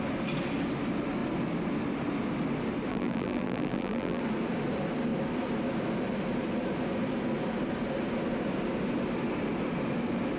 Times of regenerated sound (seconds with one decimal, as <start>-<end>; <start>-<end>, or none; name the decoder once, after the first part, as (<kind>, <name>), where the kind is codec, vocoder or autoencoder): 2.9-4.2 (vocoder, BigVGAN v2)